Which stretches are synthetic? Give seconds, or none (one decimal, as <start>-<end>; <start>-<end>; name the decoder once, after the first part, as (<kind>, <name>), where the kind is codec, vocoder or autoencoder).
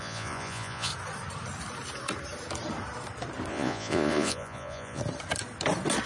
0.0-0.9 (vocoder, Vocos); 3.5-5.0